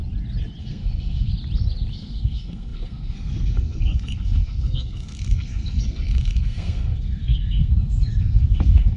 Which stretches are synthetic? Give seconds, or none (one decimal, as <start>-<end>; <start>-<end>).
0.6-1.3; 1.9-9.0